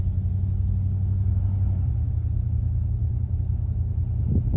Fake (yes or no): no